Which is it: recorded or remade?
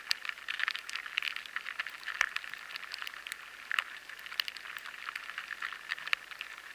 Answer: recorded